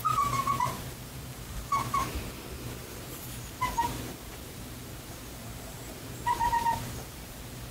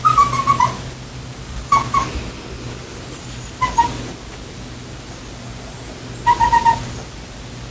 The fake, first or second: first